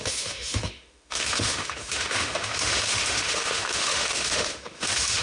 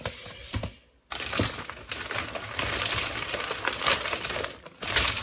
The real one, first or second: second